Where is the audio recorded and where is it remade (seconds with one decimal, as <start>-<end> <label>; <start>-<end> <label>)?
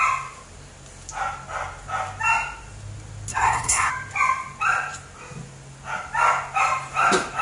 0.0-3.3 recorded; 3.3-3.9 remade; 3.9-7.4 recorded